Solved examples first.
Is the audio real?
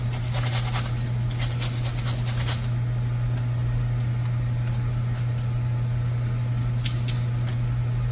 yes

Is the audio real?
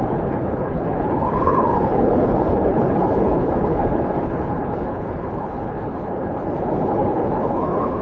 no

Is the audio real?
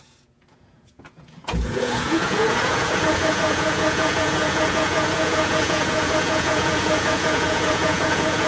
no